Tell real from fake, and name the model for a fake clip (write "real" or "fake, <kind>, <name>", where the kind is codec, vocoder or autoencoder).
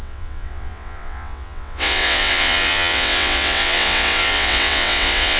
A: fake, vocoder, WaveNeXt